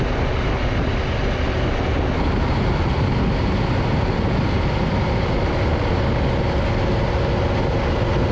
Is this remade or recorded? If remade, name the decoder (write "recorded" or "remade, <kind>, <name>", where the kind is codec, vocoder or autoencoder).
recorded